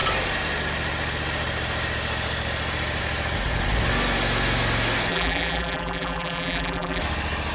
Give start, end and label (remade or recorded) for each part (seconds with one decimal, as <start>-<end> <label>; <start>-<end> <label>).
0.0-5.1 recorded; 5.1-7.0 remade; 7.0-7.5 recorded